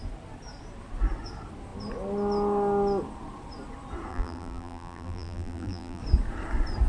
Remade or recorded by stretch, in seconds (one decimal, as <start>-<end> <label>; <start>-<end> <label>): 0.0-4.1 recorded; 4.1-6.0 remade; 6.0-6.9 recorded